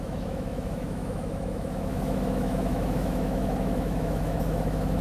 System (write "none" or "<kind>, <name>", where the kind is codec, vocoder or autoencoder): autoencoder, DAC-VAE